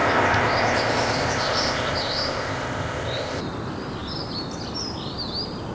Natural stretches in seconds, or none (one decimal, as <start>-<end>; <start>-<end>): 3.4-5.7